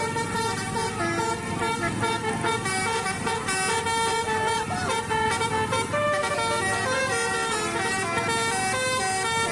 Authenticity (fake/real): real